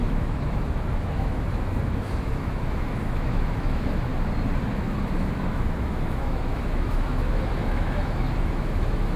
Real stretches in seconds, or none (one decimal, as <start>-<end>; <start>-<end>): 4.1-4.6

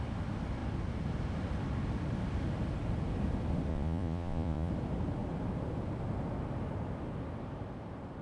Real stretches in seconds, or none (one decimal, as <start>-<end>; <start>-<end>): 0.0-3.7; 4.7-8.2

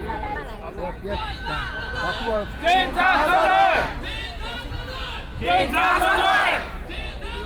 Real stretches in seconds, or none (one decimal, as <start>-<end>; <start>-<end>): 3.5-7.5

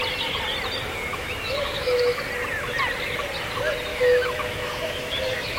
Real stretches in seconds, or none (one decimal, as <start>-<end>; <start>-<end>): 0.0-1.1; 2.2-3.9

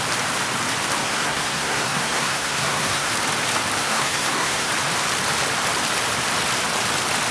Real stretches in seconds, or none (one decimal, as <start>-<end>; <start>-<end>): 0.0-1.0; 3.1-3.8; 4.7-7.3

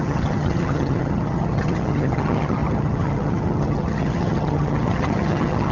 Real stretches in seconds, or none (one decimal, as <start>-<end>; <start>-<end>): none